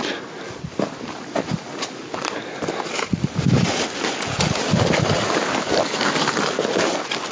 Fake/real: real